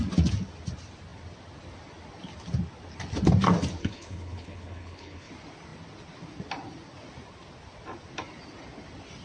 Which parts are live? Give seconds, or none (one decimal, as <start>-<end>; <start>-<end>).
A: 0.0-3.8; 5.3-9.2